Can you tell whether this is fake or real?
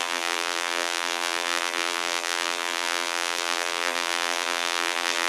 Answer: fake